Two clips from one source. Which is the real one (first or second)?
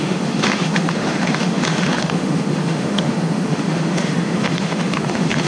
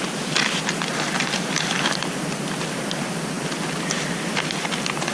second